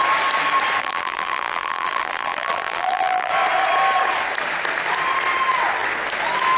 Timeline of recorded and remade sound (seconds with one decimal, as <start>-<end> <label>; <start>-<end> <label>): 0.0-0.8 recorded; 0.8-3.3 remade; 3.3-6.6 recorded

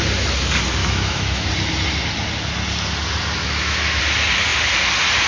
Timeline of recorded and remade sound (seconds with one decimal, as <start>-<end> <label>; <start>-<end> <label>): 0.0-0.8 recorded; 0.8-1.5 remade; 1.5-3.4 recorded; 3.4-4.0 remade; 4.0-5.3 recorded

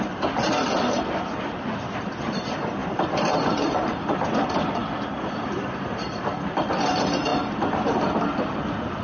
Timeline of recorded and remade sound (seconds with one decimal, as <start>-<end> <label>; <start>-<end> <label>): 0.0-7.3 remade; 7.3-7.8 recorded; 7.8-9.0 remade